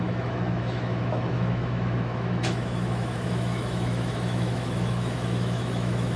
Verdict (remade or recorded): remade